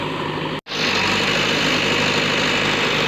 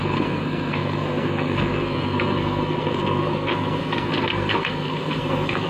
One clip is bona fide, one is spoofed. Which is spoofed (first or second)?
second